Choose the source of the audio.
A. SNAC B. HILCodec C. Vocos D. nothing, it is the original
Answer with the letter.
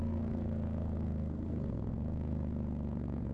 A